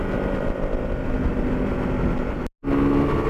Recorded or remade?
recorded